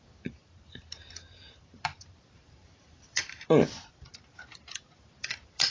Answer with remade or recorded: remade